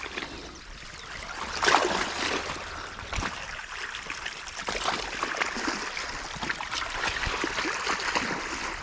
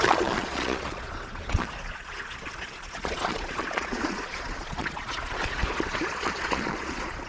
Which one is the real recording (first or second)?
first